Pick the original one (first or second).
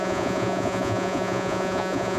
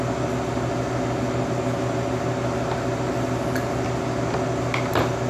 second